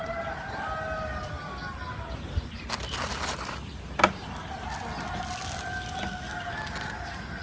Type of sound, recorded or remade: recorded